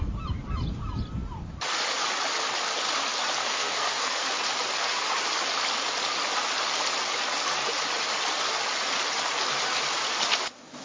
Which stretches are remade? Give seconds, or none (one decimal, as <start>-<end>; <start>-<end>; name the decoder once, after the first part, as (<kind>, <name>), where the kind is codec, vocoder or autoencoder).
3.4-4.3 (codec, SNAC)